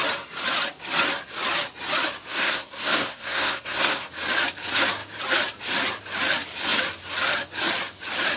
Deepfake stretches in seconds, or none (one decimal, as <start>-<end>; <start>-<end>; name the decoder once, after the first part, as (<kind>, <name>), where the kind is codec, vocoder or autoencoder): 2.3-4.1 (codec, SNAC)